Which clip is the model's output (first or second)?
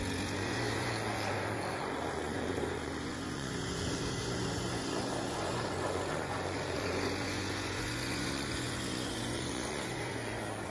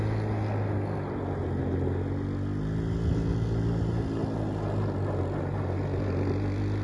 first